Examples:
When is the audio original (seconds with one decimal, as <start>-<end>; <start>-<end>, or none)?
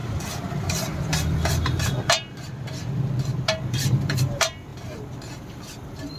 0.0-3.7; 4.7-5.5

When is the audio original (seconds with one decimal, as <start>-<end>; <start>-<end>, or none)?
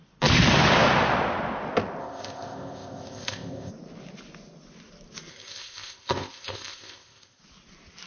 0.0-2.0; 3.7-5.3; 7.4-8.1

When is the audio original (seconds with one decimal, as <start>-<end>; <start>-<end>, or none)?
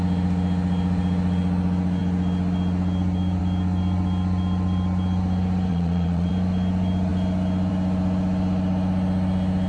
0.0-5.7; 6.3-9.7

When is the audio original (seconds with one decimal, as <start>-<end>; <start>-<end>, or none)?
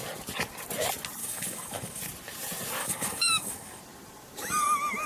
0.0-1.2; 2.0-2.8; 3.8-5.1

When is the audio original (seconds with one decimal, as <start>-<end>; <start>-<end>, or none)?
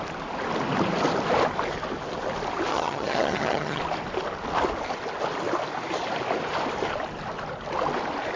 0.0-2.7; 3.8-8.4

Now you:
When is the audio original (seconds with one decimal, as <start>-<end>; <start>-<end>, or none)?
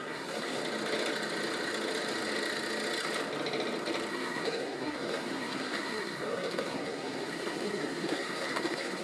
0.6-4.1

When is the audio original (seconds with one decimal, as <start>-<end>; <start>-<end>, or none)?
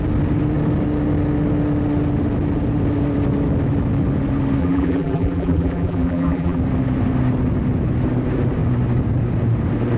0.0-4.6; 6.6-10.0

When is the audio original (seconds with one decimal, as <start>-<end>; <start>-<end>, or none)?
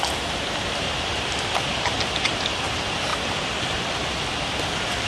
0.0-5.1